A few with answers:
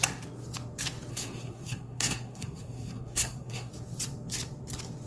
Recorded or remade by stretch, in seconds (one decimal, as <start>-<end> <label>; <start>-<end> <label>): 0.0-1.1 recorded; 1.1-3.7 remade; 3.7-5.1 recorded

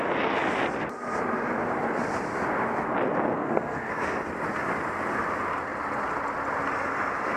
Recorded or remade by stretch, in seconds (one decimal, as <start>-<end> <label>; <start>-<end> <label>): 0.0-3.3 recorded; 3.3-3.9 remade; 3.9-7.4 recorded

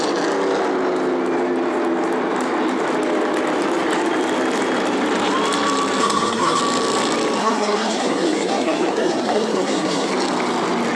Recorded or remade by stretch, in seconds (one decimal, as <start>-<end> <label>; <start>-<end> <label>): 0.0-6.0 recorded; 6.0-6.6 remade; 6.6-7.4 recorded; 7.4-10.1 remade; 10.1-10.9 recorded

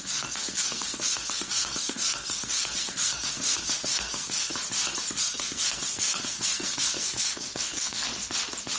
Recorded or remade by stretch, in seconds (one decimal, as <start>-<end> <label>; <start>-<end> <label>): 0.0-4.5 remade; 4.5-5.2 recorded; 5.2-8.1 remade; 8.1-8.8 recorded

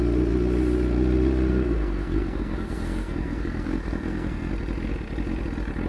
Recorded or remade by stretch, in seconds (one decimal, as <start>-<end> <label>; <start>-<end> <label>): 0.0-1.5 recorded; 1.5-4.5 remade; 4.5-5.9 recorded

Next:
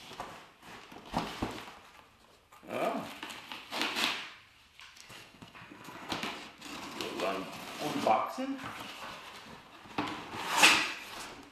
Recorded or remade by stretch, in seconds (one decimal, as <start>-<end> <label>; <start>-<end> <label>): 0.0-5.0 recorded; 5.0-6.1 remade; 6.1-11.5 recorded